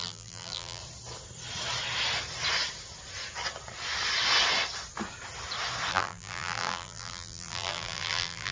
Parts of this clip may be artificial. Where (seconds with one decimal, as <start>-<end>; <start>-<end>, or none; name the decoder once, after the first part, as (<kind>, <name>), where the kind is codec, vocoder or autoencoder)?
0.0-0.8 (vocoder, BigVGAN v2); 5.9-8.5